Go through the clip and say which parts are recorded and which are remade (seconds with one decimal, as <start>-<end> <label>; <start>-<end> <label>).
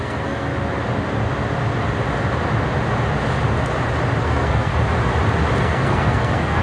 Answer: 0.0-0.5 remade; 0.5-4.2 recorded; 4.2-4.7 remade; 4.7-5.6 recorded; 5.6-6.6 remade